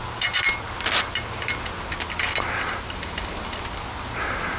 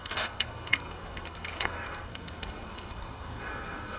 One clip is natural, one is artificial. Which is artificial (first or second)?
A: second